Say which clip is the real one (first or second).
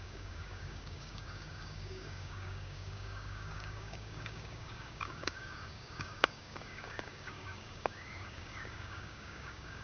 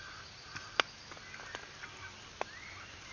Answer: second